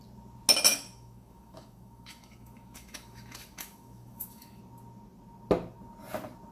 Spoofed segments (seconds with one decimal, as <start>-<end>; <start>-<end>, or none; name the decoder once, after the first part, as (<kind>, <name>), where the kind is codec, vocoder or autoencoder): 0.7-4.6 (autoencoder, DAC-VAE)